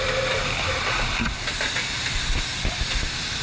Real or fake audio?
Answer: real